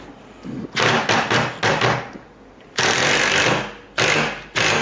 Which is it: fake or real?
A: real